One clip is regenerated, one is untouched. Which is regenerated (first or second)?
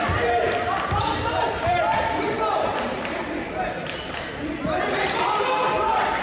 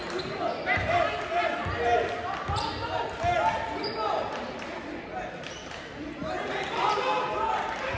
first